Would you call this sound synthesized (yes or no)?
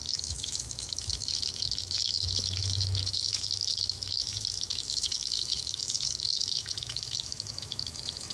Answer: yes